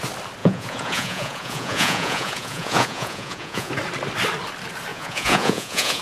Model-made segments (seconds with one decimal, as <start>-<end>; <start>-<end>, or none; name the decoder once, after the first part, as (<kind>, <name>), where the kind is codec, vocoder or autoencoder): 0.4-3.7 (vocoder, Vocos); 4.9-6.0